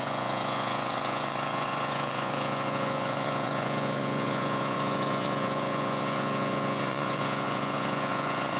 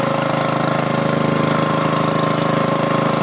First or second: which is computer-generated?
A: first